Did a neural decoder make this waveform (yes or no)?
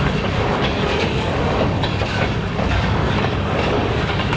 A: yes